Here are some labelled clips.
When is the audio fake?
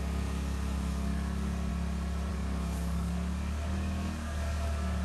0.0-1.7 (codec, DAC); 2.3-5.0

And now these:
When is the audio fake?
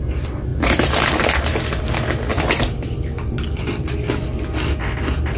none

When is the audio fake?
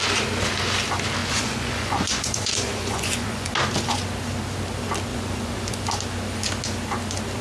1.2-3.5 (vocoder, Vocos); 5.1-5.8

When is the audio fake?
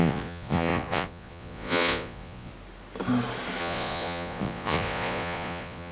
0.0-2.5 (vocoder, Vocos); 3.6-5.9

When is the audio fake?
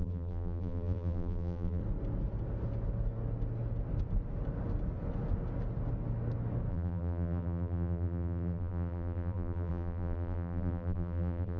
0.0-1.8 (vocoder, BigVGAN v2); 6.7-11.6